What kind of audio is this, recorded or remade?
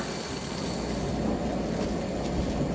recorded